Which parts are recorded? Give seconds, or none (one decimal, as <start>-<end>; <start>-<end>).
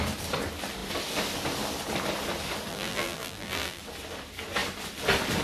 0.0-2.7; 3.8-5.4